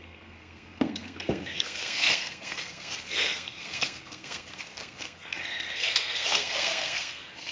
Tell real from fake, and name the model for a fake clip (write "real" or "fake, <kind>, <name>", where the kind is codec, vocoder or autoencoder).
fake, codec, SNAC